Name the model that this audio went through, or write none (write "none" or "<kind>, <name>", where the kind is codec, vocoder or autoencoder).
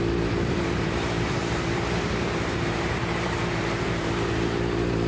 vocoder, BigVGAN v2